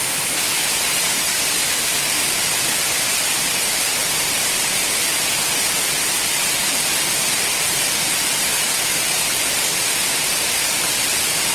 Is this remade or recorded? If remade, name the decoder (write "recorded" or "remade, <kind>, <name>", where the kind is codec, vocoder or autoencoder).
recorded